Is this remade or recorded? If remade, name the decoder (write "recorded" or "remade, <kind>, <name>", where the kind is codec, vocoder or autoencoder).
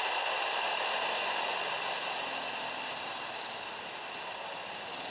remade, vocoder, BigVGAN v2